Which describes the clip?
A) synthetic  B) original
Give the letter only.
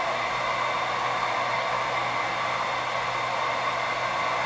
B